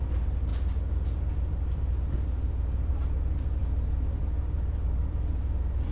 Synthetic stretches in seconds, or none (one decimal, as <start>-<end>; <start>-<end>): none